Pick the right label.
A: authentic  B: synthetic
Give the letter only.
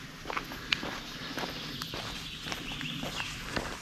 A